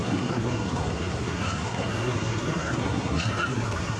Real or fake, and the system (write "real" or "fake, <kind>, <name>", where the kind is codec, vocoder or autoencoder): fake, codec, SNAC